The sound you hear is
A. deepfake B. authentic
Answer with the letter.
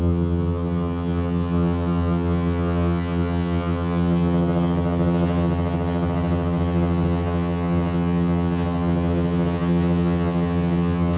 A